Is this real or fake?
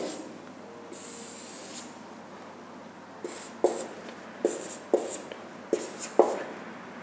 real